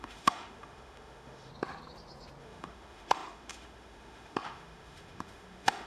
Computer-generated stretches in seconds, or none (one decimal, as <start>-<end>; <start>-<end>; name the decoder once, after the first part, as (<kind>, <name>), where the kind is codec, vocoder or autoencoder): 0.0-1.5 (autoencoder, DAC-VAE); 2.4-5.9